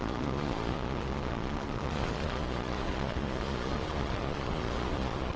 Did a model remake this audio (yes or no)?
yes